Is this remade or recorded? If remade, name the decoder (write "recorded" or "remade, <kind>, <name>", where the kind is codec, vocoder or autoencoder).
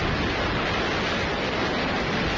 recorded